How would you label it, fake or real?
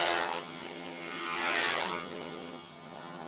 fake